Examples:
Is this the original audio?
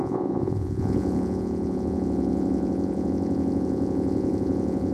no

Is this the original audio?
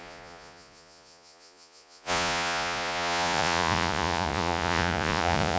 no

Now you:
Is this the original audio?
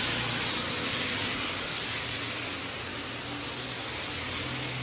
yes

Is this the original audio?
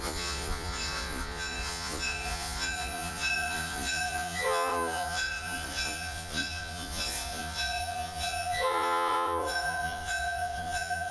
no